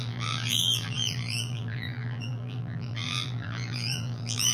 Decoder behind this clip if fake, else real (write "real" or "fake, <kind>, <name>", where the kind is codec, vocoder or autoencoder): fake, vocoder, BigVGAN v2